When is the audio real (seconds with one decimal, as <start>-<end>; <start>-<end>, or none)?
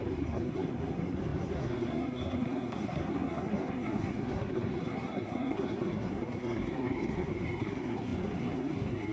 none